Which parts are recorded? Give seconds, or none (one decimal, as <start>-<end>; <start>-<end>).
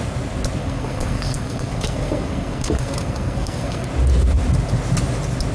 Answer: 0.0-0.6; 3.9-5.5